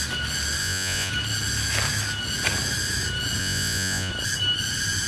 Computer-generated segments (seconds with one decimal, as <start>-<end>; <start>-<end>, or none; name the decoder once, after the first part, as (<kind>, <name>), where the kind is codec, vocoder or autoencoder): 0.6-1.1 (vocoder, Vocos); 3.4-4.1